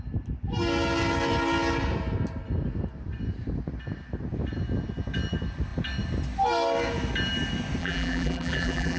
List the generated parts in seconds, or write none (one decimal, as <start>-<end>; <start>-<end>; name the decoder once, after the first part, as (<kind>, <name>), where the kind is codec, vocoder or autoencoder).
7.8-9.0 (vocoder, BigVGAN v2)